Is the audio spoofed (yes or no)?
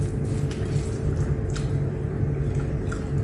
no